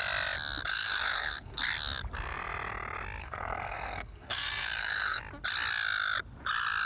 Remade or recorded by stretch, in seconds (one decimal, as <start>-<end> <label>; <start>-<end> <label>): 0.0-0.7 recorded; 0.7-1.6 remade; 1.6-3.2 recorded; 3.2-5.2 remade; 5.2-6.9 recorded